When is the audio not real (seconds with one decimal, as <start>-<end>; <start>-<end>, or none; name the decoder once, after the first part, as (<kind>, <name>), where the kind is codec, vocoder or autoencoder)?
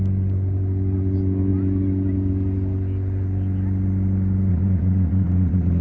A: 4.5-5.8 (vocoder, Vocos)